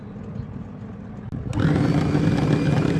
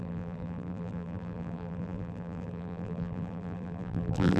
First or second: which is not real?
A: second